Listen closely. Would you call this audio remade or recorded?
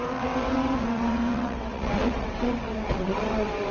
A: remade